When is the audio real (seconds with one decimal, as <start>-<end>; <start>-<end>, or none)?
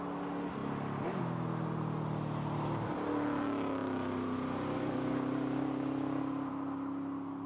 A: 0.0-7.5